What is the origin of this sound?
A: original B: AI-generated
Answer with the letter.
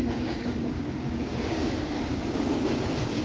B